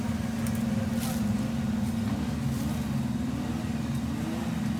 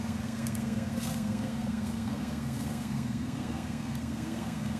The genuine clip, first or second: first